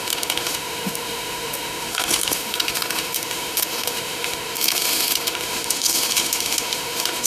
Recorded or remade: remade